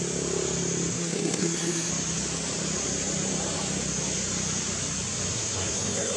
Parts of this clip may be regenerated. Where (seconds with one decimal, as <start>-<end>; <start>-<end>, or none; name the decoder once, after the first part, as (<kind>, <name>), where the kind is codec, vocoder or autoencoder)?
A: 0.9-1.9 (codec, SNAC); 5.3-6.2